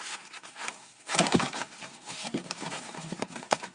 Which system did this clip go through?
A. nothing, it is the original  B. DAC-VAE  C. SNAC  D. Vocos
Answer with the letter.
C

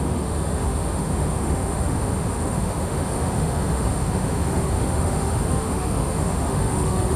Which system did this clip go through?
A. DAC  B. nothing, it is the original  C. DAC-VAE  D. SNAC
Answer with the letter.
C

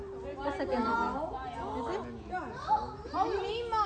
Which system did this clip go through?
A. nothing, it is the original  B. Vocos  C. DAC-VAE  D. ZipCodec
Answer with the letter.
A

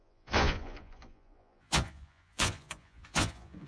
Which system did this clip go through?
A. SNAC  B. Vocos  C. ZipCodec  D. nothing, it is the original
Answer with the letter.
B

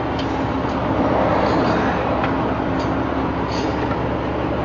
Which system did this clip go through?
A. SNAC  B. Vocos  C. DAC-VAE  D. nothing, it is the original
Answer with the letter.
D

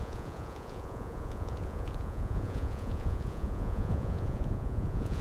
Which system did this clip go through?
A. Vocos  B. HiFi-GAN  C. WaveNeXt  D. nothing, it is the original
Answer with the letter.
A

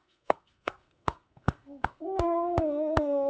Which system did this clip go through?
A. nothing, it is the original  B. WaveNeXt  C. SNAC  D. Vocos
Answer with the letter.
C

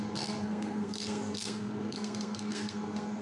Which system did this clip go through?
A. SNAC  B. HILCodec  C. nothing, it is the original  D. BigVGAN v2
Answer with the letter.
A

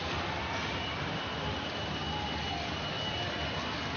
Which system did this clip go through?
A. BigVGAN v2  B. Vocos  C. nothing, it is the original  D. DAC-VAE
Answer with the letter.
C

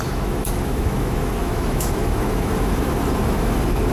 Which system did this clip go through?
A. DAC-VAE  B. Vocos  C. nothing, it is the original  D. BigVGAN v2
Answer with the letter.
A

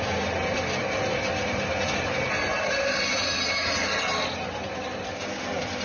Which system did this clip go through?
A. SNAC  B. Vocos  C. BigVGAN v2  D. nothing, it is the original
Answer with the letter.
D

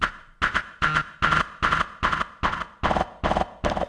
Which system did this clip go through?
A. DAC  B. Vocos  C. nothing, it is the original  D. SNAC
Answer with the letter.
C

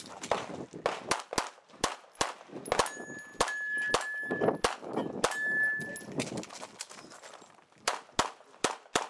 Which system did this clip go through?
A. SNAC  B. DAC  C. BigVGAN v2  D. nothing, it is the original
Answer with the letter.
D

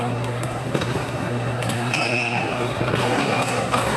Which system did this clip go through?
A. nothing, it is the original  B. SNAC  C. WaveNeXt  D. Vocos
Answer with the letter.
B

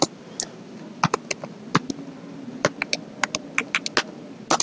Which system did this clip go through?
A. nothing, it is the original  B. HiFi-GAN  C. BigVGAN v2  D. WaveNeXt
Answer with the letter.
A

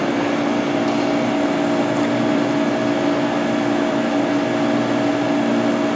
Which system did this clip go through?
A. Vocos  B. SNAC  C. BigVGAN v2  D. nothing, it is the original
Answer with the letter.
D